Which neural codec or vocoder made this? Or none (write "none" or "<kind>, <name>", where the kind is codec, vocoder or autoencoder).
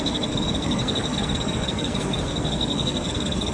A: codec, SNAC